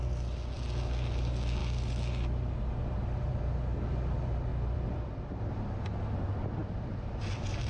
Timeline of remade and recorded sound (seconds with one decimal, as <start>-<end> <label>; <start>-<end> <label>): 0.0-4.5 recorded; 4.5-5.4 remade; 5.4-6.6 recorded; 6.6-7.7 remade